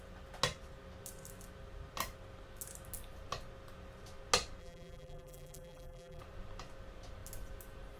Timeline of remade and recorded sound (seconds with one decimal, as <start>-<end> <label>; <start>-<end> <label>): 0.0-4.6 recorded; 4.6-6.2 remade; 6.2-8.0 recorded